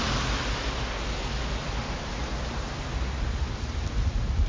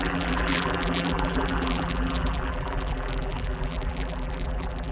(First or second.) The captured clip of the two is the first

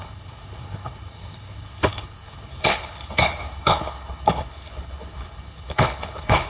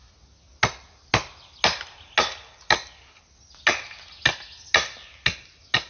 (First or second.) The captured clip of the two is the second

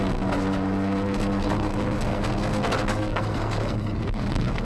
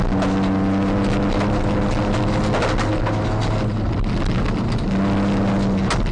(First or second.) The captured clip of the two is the second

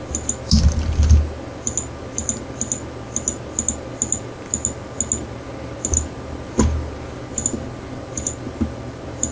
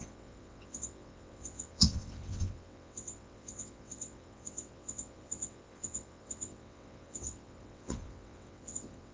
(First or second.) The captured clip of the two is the first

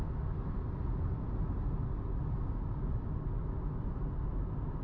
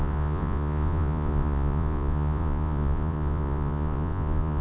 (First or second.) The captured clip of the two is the first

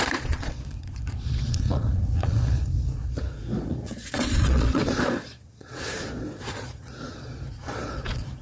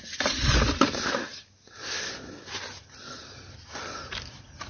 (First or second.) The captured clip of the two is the second